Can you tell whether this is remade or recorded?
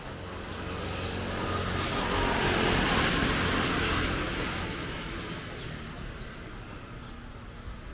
recorded